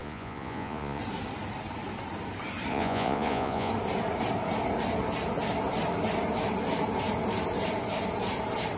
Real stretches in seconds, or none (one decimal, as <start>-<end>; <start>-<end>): 1.0-2.7; 3.7-8.8